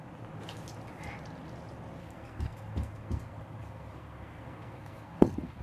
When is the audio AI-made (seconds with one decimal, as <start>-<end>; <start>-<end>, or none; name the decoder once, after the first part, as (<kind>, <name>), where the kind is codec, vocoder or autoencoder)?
2.0-5.6 (codec, SNAC)